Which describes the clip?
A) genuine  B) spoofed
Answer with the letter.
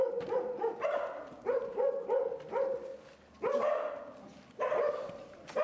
A